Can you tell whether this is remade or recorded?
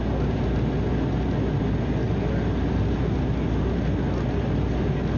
recorded